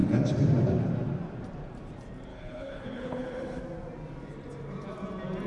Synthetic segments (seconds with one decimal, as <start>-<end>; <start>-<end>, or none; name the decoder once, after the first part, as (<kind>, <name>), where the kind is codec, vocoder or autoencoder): 2.3-3.6 (codec, HILCodec)

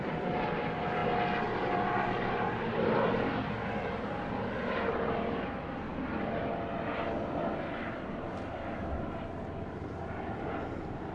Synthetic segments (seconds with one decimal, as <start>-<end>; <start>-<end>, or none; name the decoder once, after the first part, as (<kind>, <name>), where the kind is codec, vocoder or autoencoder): 0.0-1.0 (vocoder, BigVGAN v2); 5.1-5.9; 9.1-11.1